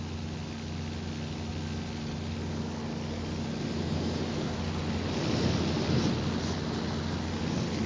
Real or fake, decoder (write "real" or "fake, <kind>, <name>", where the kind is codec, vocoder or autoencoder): real